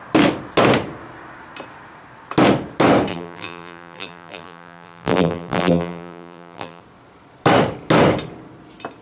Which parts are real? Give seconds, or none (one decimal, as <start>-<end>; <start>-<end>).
0.0-3.1; 6.8-9.0